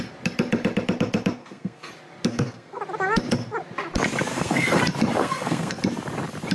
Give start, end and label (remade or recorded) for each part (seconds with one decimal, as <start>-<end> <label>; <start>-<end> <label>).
0.0-1.4 recorded; 1.4-1.9 remade; 1.9-2.3 recorded; 2.3-2.8 remade; 2.8-4.3 recorded; 4.3-4.8 remade; 4.8-5.2 recorded; 5.2-5.8 remade; 5.8-6.5 recorded